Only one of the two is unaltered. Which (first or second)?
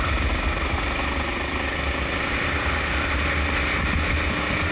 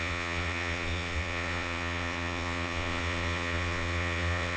first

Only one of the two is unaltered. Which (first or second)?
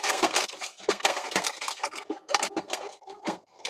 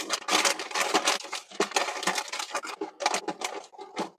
second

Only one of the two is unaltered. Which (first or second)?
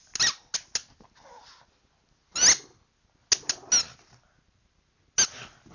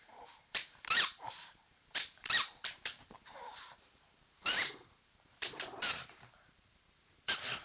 first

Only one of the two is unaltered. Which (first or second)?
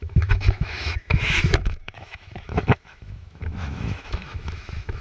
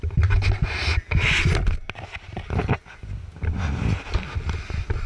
second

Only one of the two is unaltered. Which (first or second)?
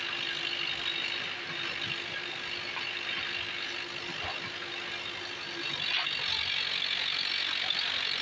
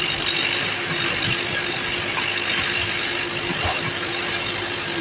first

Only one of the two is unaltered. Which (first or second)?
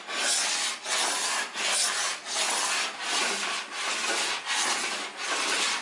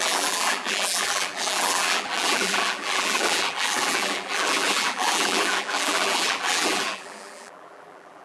first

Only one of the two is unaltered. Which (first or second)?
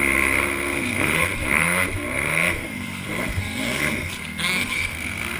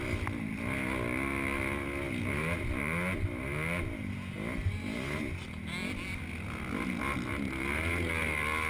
second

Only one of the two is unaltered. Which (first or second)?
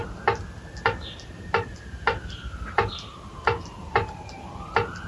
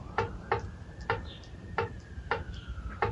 first